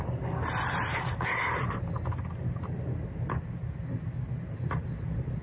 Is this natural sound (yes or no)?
yes